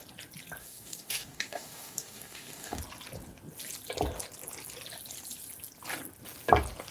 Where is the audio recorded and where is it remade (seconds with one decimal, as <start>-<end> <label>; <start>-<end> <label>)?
0.0-0.6 recorded; 0.6-2.8 remade; 2.8-6.9 recorded